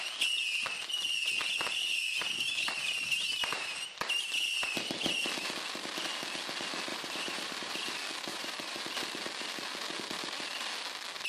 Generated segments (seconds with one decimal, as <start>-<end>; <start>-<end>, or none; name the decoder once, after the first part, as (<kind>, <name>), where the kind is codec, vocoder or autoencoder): 3.4-4.0 (vocoder, BigVGAN v2); 6.9-7.7; 8.3-8.8